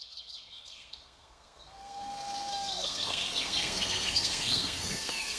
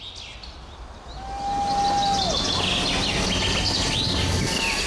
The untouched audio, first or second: second